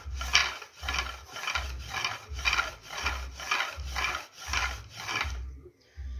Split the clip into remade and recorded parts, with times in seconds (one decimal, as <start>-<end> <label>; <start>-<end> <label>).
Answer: 0.0-4.6 recorded; 4.6-6.2 remade